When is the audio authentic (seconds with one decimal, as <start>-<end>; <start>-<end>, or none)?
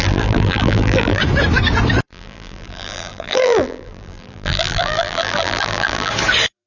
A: 1.2-2.1; 6.1-6.7